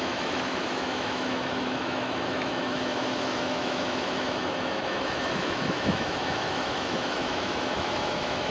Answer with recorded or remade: remade